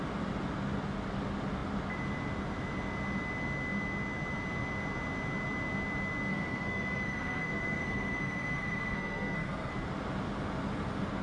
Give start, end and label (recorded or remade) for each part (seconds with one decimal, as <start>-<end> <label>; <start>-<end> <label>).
0.0-6.3 recorded; 6.3-9.7 remade; 9.7-11.2 recorded